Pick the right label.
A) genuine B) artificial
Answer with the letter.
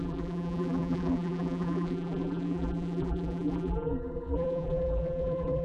B